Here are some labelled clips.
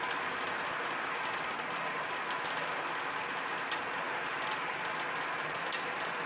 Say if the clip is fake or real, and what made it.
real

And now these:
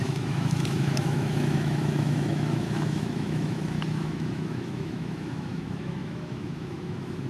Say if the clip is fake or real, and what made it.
fake, autoencoder, DAC-VAE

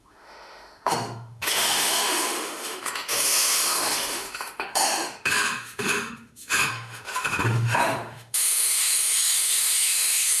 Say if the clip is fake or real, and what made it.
fake, autoencoder, DAC-VAE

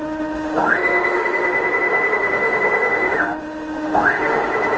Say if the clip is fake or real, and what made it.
fake, autoencoder, DAC-VAE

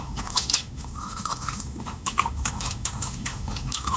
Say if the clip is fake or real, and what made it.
fake, autoencoder, DAC-VAE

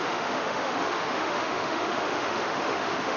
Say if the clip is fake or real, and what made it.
fake, autoencoder, DAC-VAE